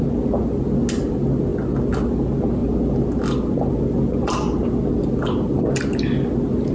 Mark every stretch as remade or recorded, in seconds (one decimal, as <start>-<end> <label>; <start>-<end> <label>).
0.0-6.7 recorded